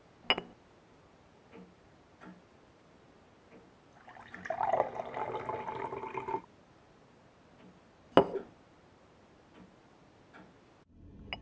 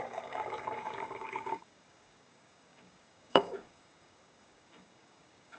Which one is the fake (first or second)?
second